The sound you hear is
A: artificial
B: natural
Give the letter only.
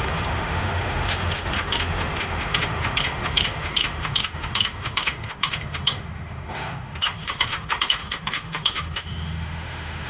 A